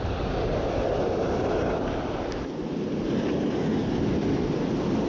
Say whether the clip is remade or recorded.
recorded